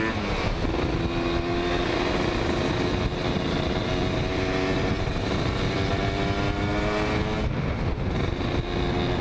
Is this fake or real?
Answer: real